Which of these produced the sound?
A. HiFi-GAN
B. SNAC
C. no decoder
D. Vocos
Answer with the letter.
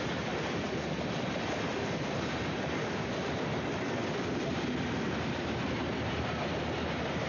C